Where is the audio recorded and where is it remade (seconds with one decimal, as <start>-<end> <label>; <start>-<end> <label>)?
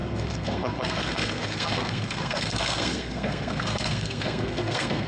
0.0-5.1 remade